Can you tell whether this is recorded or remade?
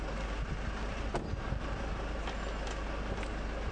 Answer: recorded